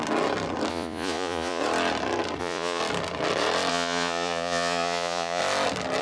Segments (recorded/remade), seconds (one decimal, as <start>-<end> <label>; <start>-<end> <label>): 0.0-0.7 recorded; 0.7-1.6 remade; 1.6-2.4 recorded; 2.4-2.8 remade; 2.8-3.7 recorded; 3.7-5.4 remade; 5.4-6.0 recorded